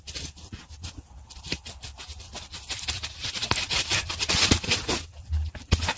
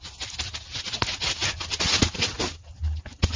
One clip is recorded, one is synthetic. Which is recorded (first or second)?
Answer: second